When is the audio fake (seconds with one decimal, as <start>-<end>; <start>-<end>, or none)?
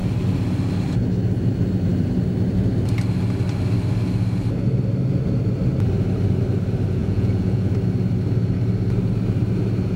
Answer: 7.0-7.7